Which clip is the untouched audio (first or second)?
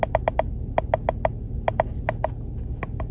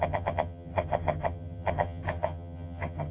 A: first